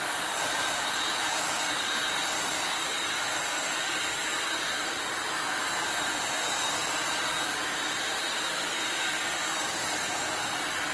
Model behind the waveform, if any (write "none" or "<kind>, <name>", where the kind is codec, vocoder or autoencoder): vocoder, BigVGAN v2